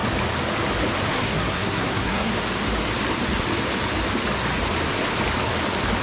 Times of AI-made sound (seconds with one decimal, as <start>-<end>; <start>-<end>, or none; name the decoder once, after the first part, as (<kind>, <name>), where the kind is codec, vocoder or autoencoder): 1.1-2.3 (codec, SNAC)